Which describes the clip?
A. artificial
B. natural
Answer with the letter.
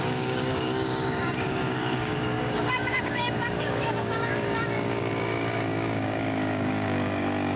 A